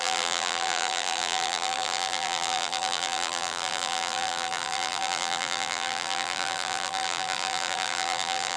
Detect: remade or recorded remade